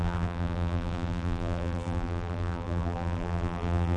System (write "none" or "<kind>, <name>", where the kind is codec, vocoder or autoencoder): vocoder, BigVGAN v2